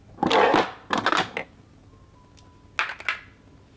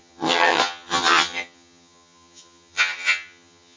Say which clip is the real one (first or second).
first